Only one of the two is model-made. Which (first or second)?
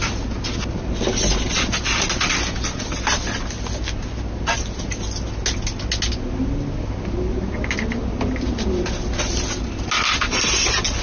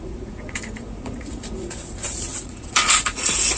second